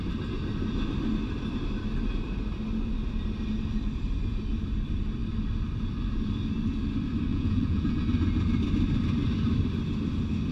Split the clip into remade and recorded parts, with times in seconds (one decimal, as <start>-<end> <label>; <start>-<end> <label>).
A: 0.0-7.3 recorded; 7.3-8.0 remade; 8.0-10.5 recorded